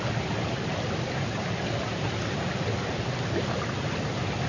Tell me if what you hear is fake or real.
real